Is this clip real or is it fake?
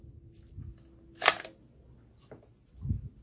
real